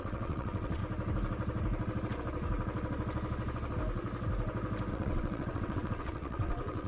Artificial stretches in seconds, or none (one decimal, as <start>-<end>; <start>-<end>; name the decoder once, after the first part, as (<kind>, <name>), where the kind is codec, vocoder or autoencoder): 0.0-0.8 (vocoder, WaveNeXt); 4.9-6.9